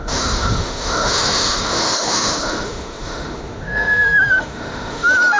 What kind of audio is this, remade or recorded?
remade